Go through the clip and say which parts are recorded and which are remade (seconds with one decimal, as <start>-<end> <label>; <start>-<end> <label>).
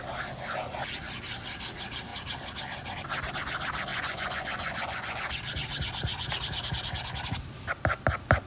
0.0-3.9 recorded; 3.9-5.3 remade; 5.3-8.5 recorded